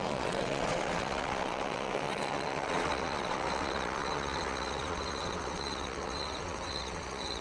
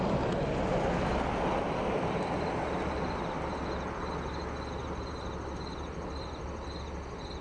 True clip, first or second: second